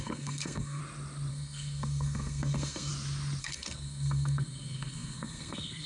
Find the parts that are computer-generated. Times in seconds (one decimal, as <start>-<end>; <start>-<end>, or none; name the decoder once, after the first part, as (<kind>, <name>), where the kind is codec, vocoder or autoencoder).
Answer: 0.0-0.8 (codec, SNAC); 1.3-2.9; 3.4-5.9